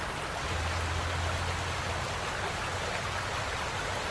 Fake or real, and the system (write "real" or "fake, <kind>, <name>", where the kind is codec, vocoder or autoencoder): real